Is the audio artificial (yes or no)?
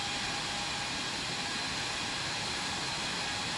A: no